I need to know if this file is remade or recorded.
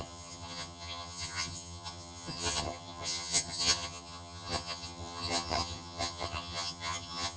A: remade